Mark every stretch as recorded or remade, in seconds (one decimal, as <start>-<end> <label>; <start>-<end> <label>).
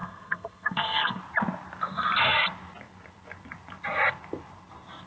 0.0-1.2 remade; 1.2-5.1 recorded